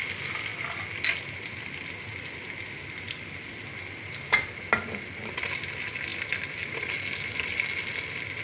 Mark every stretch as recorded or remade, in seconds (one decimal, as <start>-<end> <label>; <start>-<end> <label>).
0.0-8.4 recorded

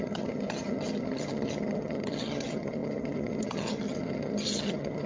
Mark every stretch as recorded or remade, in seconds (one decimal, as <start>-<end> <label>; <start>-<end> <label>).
0.0-5.1 remade

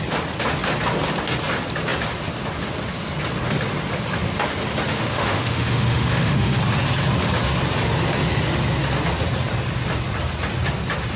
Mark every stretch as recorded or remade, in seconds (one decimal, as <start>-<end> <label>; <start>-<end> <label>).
0.0-4.9 recorded; 4.9-6.6 remade; 6.6-11.2 recorded

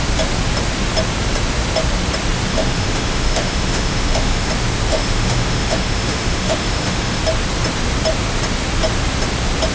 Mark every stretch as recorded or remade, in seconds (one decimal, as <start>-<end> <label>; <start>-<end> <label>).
0.0-2.5 recorded; 2.5-4.5 remade; 4.5-4.9 recorded; 4.9-7.2 remade; 7.2-9.7 recorded

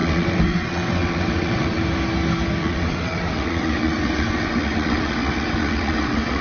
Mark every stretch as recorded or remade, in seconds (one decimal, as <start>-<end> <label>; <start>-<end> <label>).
0.0-1.8 remade; 1.8-2.6 recorded; 2.6-6.4 remade

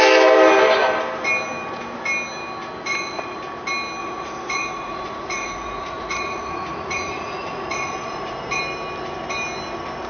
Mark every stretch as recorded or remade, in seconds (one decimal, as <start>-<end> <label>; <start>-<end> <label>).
0.0-2.9 recorded; 2.9-3.4 remade; 3.4-4.0 recorded; 4.0-8.6 remade; 8.6-10.1 recorded

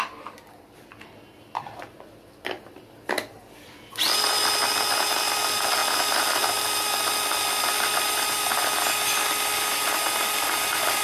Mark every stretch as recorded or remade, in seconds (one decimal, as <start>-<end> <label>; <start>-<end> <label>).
0.0-11.0 recorded

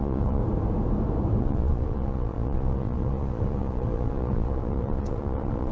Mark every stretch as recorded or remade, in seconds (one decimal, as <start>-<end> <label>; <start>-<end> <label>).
0.0-0.4 remade; 0.4-1.4 recorded; 1.4-5.7 remade